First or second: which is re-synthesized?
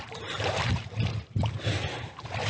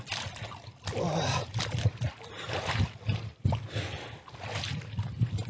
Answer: first